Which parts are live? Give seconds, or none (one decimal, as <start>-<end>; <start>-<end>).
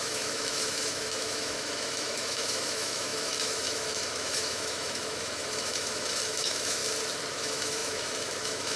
6.8-7.3